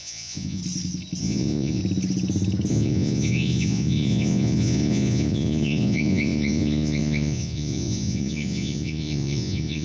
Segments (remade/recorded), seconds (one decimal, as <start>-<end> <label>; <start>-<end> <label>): 0.0-0.6 remade; 0.6-1.2 recorded; 1.2-1.8 remade; 1.8-2.7 recorded; 2.7-9.8 remade